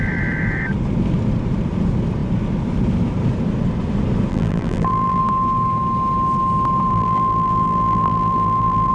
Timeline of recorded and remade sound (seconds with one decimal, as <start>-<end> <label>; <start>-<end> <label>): 0.0-4.3 recorded; 4.3-5.2 remade; 5.2-6.9 recorded; 6.9-8.9 remade